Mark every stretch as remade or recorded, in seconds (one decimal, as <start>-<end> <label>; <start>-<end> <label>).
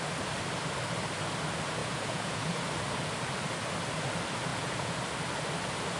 0.0-1.8 recorded; 1.8-2.6 remade; 2.6-4.5 recorded; 4.5-5.0 remade; 5.0-6.0 recorded